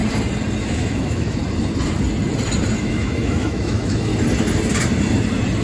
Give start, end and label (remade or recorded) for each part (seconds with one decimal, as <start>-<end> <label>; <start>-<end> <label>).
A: 0.0-0.6 recorded; 0.6-1.4 remade; 1.4-2.8 recorded; 2.8-4.1 remade; 4.1-5.6 recorded